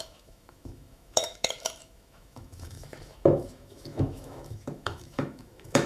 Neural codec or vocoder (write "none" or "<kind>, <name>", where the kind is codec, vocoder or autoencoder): autoencoder, DAC-VAE